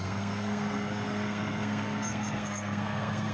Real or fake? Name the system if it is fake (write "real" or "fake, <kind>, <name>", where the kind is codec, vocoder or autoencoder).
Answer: fake, codec, SNAC